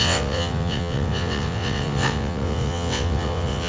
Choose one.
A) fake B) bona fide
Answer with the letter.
A